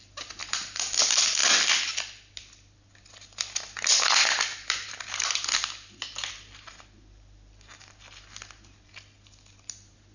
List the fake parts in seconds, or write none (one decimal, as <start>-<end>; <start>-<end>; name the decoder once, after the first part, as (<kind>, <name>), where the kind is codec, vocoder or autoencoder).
none